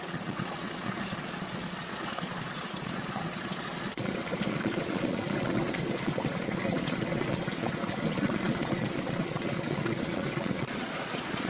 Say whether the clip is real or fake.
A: fake